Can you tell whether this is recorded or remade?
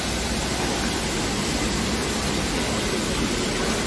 recorded